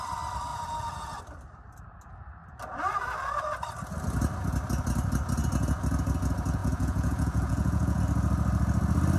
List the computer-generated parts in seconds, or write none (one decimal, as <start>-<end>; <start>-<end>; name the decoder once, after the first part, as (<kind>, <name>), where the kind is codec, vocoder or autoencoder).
0.5-1.2 (vocoder, Vocos); 6.6-8.0